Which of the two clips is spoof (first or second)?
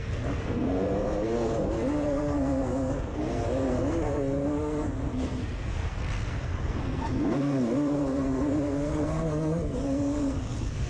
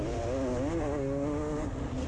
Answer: first